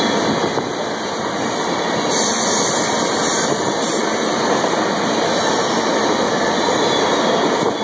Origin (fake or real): real